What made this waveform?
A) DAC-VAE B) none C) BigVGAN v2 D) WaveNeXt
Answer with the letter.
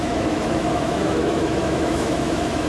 A